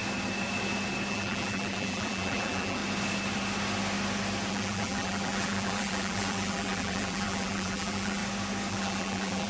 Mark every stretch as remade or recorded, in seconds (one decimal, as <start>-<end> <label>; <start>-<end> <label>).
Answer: 0.0-1.1 recorded; 1.1-2.8 remade; 2.8-4.5 recorded; 4.5-8.2 remade; 8.2-8.7 recorded; 8.7-9.5 remade